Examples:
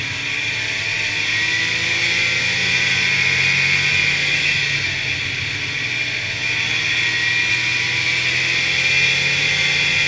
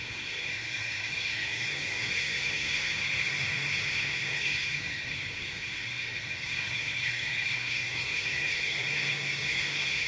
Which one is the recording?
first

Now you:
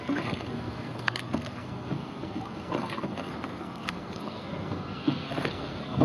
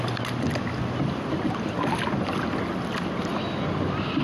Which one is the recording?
second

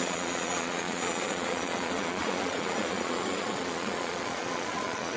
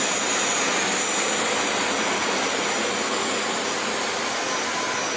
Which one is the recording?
second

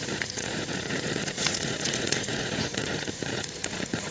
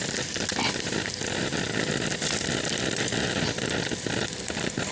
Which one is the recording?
second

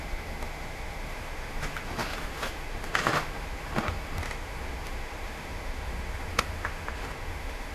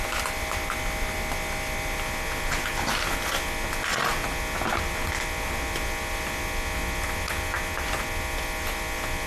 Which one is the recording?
second